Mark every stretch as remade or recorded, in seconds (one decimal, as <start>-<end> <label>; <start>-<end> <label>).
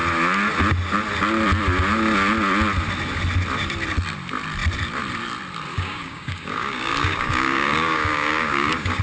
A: 0.0-5.7 recorded; 5.7-9.0 remade